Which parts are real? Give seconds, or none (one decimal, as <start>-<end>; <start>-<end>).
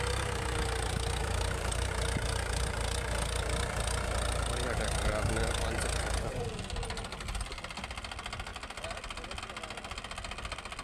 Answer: 0.0-1.2; 1.9-10.8